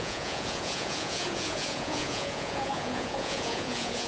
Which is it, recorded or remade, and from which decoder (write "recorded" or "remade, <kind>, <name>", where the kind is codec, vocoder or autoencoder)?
remade, vocoder, Vocos